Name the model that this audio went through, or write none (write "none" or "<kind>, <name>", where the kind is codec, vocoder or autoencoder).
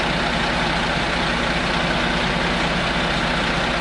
none